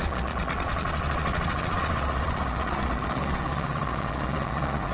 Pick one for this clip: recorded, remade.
remade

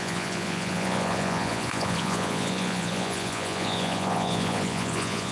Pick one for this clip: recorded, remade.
remade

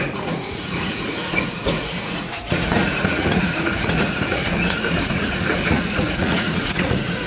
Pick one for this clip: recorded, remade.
remade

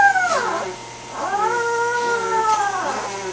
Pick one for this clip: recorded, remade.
recorded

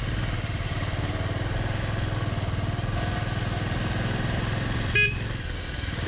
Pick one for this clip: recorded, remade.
recorded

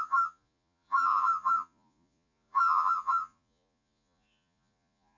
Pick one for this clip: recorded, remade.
remade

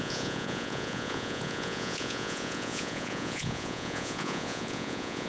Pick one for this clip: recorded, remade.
remade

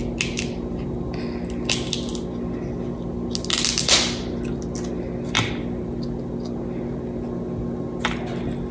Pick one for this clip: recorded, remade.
recorded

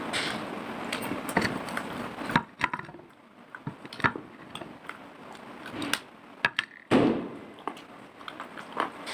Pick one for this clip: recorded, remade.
recorded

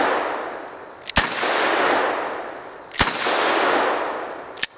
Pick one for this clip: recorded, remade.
recorded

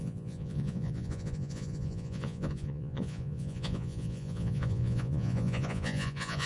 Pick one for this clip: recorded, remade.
remade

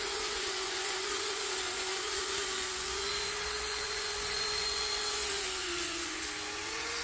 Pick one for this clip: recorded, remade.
remade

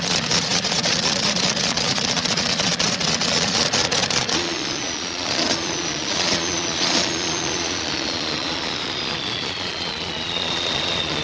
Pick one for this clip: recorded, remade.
remade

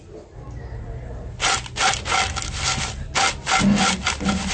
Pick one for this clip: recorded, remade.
recorded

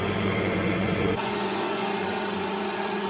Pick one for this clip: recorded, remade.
remade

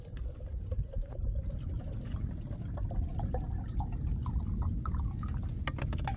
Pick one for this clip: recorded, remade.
recorded